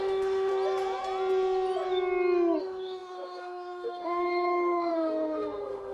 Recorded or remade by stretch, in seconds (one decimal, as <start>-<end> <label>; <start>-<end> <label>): 0.0-0.5 remade; 0.5-2.6 recorded; 2.6-5.9 remade